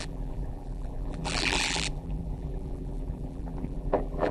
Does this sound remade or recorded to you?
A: remade